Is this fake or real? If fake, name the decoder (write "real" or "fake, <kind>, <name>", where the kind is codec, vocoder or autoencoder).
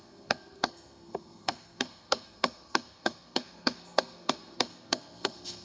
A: fake, codec, SNAC